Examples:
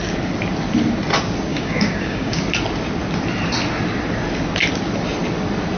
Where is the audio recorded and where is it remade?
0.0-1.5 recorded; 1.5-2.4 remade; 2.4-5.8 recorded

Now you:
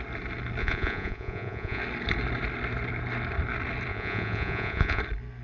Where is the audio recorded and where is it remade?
0.0-0.6 recorded; 0.6-1.8 remade; 1.8-3.9 recorded; 3.9-5.0 remade; 5.0-5.4 recorded

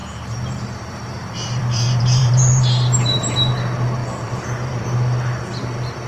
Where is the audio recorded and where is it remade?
0.0-3.5 remade; 3.5-4.0 recorded; 4.0-4.8 remade; 4.8-6.1 recorded

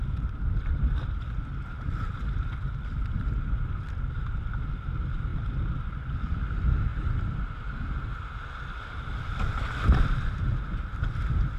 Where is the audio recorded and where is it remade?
0.0-11.6 recorded

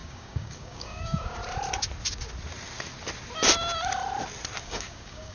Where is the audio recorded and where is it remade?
0.0-1.4 remade; 1.4-4.6 recorded; 4.6-5.3 remade

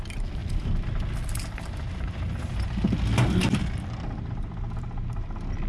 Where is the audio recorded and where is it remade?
0.0-0.4 recorded; 0.4-3.6 remade; 3.6-5.7 recorded

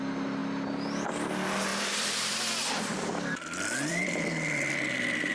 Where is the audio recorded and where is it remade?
0.0-1.7 recorded; 1.7-5.3 remade